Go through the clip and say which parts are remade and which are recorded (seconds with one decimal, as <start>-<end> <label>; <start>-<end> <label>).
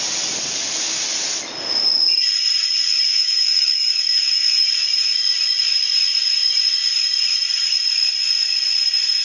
0.0-3.1 recorded; 3.1-4.6 remade; 4.6-9.2 recorded